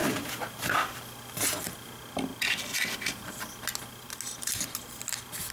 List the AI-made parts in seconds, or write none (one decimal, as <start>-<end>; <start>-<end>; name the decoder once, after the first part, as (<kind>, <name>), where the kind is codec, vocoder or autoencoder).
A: 0.0-0.7 (vocoder, BigVGAN v2)